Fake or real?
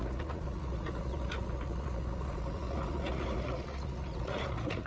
fake